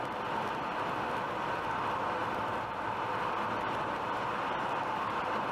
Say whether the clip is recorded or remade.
recorded